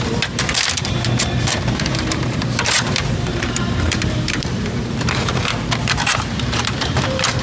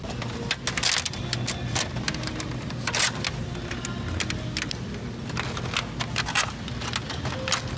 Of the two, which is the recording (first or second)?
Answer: second